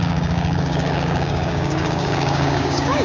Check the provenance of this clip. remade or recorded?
remade